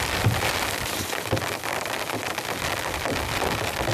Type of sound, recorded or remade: recorded